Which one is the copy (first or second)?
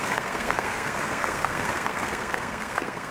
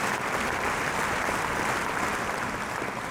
first